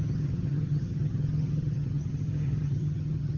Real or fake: fake